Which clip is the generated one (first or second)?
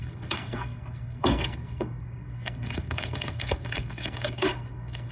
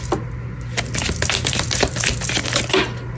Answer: first